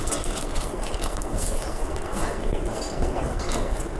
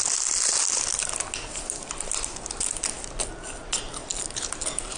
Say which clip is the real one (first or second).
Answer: second